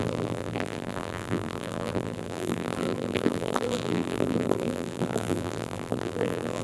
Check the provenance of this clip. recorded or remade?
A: remade